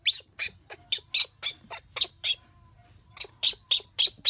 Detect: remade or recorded recorded